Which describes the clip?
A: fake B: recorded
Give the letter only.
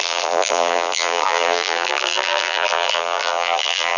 A